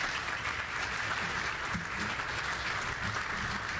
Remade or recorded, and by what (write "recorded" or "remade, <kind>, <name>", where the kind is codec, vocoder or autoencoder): recorded